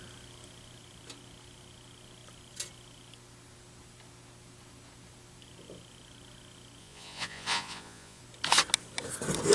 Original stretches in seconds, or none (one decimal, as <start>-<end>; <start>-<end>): 0.0-6.8; 8.2-9.5